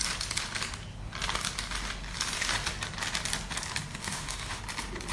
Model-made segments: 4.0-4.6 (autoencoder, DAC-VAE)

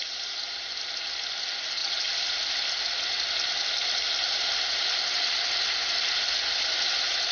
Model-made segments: none

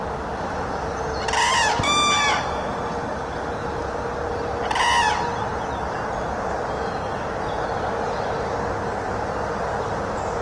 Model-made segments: none

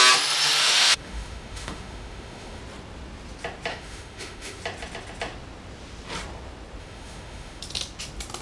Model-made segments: 0.6-2.6 (autoencoder, DAC-VAE); 3.7-4.6; 6.8-7.6

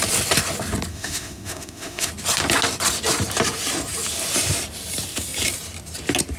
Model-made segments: 0.9-2.1 (autoencoder, DAC-VAE)

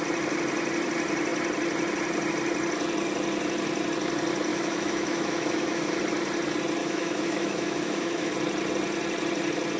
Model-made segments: 4.5-6.0 (autoencoder, DAC-VAE); 6.8-8.3